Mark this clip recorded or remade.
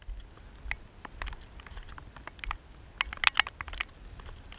recorded